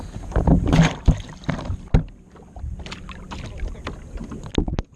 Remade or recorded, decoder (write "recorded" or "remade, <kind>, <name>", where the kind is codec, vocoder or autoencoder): recorded